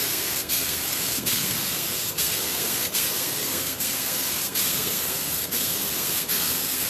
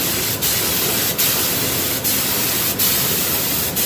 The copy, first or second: first